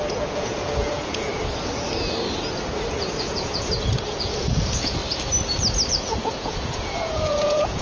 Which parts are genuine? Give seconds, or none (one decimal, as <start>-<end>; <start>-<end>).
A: 1.3-2.9; 5.0-5.9